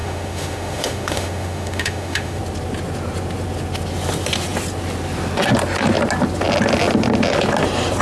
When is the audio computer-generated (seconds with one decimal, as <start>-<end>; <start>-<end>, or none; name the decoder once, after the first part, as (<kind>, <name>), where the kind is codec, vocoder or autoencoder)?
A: 0.0-2.4 (autoencoder, DAC-VAE)